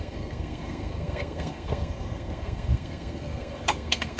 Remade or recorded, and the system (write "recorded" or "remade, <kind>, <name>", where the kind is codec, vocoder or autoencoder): remade, codec, SNAC